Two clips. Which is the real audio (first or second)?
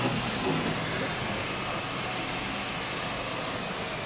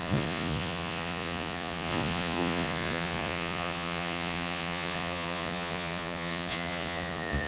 first